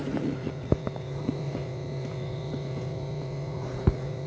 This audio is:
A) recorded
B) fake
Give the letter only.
B